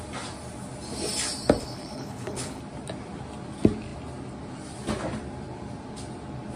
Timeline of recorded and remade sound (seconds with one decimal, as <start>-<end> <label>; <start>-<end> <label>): 0.0-1.6 recorded; 1.6-2.6 remade; 2.6-6.6 recorded